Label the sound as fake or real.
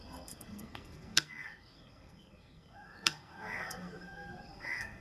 fake